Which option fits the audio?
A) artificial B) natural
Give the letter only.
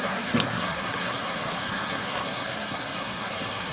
A